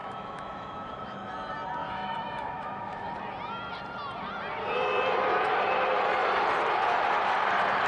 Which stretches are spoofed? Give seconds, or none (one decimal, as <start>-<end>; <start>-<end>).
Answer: 0.0-1.3; 1.8-3.1